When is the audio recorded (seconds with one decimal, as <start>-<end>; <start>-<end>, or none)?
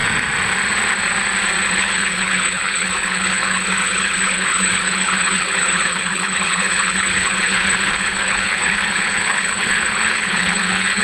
0.0-1.7